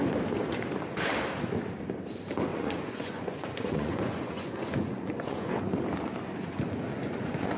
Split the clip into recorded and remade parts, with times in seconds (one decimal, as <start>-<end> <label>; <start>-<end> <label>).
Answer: 0.0-2.5 recorded; 2.5-5.5 remade; 5.5-6.9 recorded; 6.9-7.6 remade